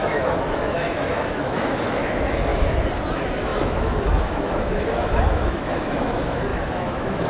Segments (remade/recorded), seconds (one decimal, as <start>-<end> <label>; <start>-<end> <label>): 0.0-2.5 remade; 2.5-3.1 recorded; 3.1-7.3 remade